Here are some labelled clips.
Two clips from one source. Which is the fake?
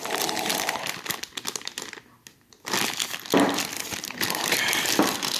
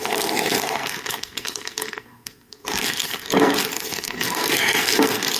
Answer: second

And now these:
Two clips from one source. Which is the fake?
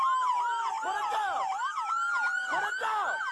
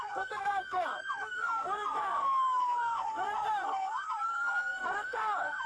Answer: second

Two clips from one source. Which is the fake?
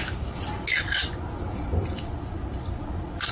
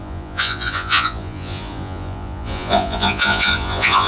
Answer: second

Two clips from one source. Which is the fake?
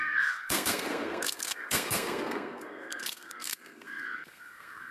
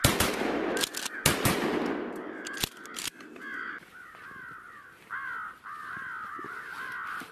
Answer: first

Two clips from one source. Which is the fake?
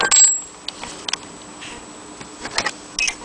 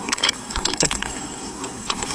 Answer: second